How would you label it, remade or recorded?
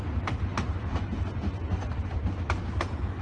recorded